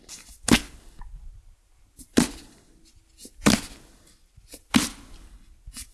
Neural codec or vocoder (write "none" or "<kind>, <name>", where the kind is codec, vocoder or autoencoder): none